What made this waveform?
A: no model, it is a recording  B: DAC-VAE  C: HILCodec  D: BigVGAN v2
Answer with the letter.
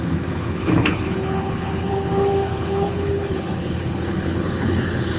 C